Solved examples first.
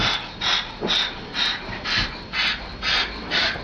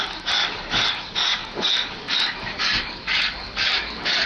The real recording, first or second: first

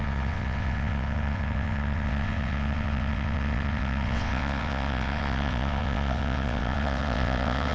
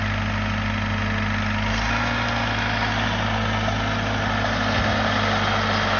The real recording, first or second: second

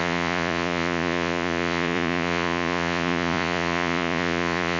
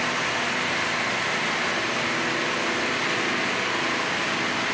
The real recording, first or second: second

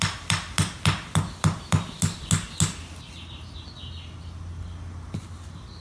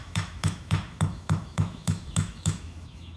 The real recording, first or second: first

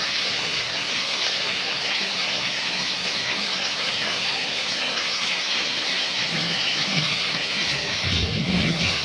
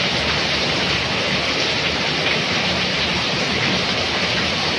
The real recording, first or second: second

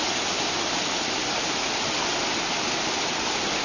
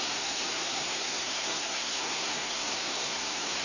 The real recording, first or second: first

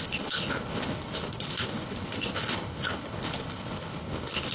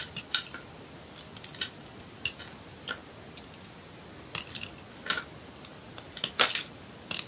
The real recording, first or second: second